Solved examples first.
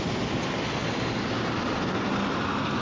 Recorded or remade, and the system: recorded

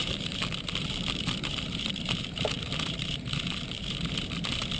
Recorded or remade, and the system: remade, vocoder, BigVGAN v2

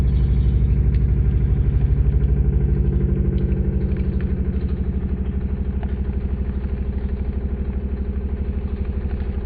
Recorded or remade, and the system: recorded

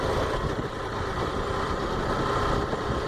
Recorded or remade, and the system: remade, vocoder, BigVGAN v2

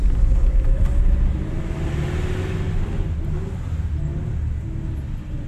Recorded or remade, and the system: recorded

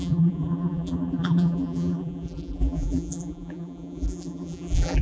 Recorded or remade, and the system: remade, vocoder, BigVGAN v2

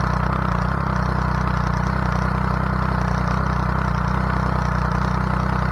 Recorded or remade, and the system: recorded